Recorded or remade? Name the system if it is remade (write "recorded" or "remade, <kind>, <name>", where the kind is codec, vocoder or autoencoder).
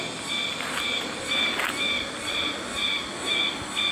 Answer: recorded